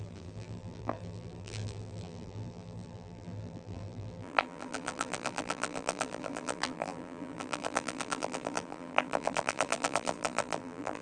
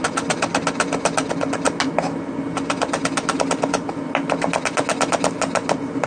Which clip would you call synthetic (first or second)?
first